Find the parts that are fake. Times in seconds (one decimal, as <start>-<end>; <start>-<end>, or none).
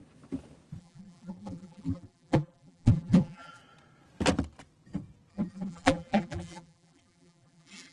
0.8-3.6; 5.3-7.9